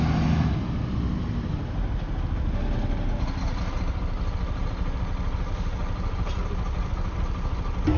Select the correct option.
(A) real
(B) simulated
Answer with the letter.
A